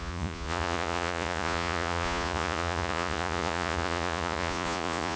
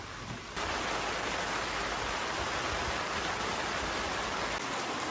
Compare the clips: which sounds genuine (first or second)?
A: second